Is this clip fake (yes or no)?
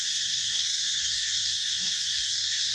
yes